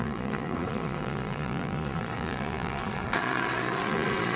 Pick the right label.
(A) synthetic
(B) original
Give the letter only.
A